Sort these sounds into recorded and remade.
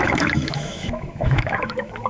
remade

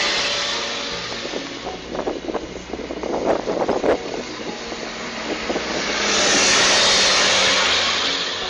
recorded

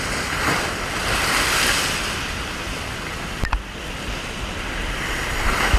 remade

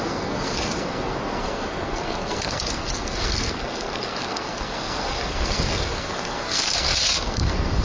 remade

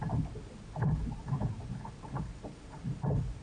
recorded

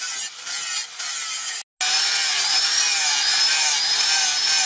recorded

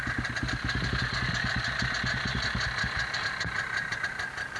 recorded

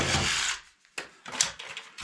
recorded